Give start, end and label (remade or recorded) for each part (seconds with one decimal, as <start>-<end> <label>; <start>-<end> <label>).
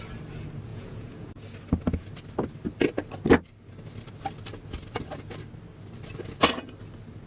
0.0-0.7 recorded; 0.7-1.4 remade; 1.4-7.3 recorded